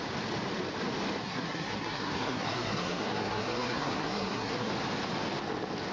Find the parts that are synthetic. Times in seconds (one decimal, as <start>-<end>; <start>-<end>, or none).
1.2-4.7

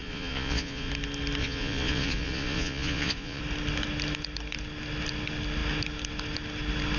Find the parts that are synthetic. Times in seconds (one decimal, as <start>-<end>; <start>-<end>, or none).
0.0-0.9; 1.4-3.4

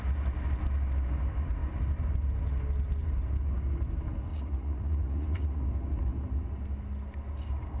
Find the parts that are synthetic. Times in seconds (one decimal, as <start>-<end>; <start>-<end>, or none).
4.3-5.6

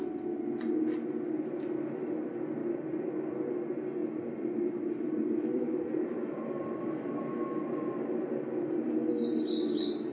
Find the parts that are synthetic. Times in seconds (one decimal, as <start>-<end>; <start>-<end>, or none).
2.6-3.5; 4.0-7.1

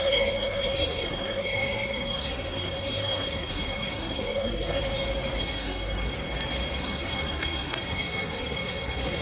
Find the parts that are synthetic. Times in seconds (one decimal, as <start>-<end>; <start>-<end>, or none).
0.0-4.8; 5.4-6.1; 6.8-9.2

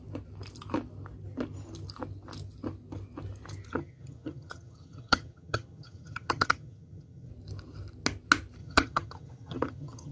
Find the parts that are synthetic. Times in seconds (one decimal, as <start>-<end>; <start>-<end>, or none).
3.7-7.3; 8.6-10.1